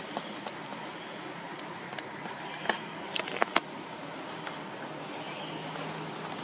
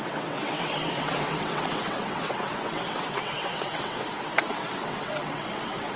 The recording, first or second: first